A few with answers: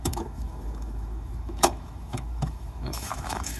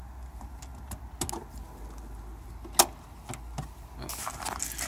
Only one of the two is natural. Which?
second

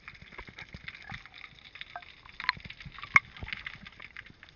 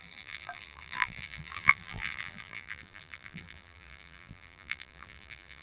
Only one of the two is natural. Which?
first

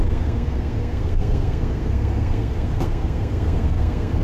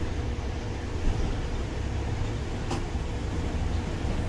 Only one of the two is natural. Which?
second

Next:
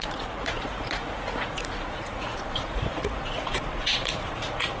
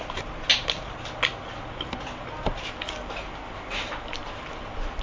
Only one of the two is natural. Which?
second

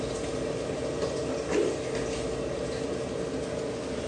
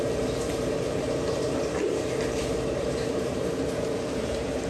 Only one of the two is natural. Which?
first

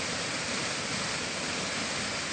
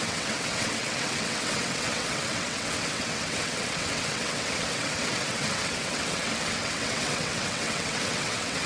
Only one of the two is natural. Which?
first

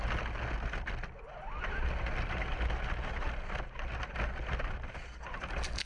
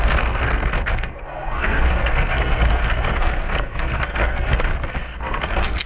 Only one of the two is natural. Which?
first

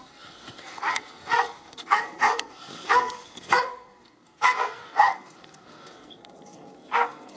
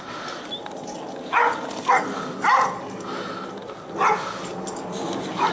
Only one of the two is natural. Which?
second